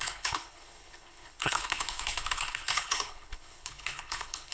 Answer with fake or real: fake